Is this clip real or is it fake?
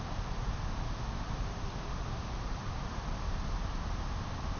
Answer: real